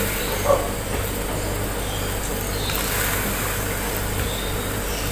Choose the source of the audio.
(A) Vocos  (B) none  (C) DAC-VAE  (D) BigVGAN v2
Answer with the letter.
B